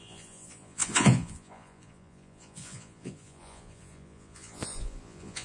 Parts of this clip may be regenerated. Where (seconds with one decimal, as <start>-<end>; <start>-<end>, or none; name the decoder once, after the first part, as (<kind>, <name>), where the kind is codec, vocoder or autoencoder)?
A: 0.0-5.4 (vocoder, Vocos)